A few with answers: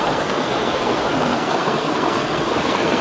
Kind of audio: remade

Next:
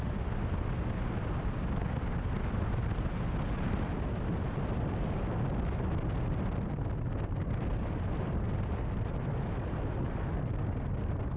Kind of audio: recorded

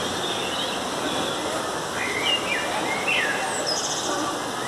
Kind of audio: recorded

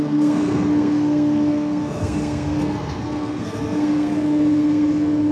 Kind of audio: remade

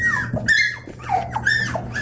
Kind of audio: recorded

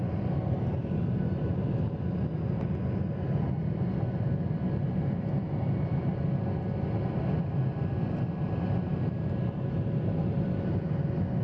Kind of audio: recorded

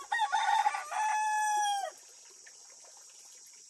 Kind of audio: recorded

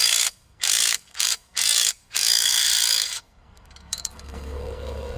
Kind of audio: remade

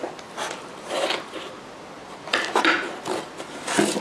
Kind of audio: recorded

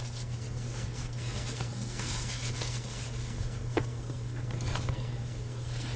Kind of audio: remade